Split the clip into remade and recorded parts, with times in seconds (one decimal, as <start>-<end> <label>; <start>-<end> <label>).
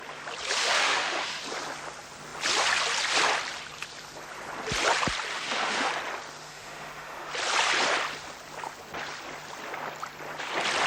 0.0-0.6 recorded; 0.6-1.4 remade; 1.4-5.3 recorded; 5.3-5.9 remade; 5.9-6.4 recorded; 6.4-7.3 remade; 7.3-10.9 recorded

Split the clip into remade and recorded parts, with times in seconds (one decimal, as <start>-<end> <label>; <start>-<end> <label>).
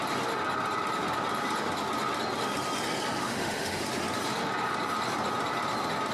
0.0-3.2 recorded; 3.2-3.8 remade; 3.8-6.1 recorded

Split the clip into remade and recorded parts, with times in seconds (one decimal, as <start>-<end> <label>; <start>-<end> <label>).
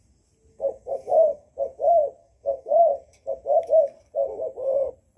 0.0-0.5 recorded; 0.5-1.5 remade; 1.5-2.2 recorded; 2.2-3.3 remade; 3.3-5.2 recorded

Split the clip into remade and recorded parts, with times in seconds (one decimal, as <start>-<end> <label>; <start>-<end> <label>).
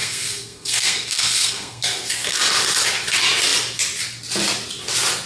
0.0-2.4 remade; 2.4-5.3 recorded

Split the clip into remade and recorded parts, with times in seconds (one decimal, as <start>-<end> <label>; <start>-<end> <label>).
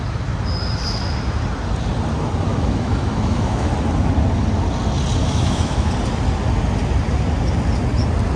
0.0-2.5 recorded; 2.5-3.7 remade; 3.7-5.2 recorded; 5.2-5.9 remade; 5.9-8.4 recorded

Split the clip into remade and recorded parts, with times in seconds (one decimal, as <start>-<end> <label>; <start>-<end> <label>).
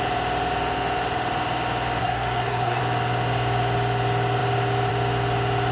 0.0-2.0 recorded; 2.0-2.8 remade; 2.8-5.7 recorded